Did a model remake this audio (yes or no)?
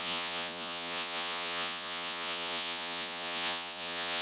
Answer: yes